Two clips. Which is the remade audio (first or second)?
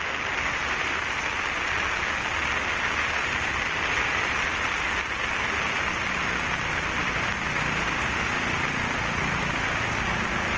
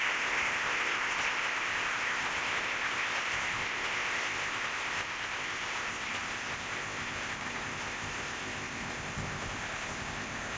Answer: second